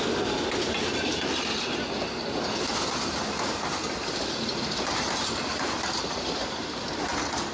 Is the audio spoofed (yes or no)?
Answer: no